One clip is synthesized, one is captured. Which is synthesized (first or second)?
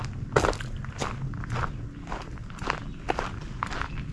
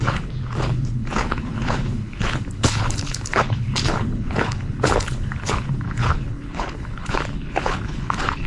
second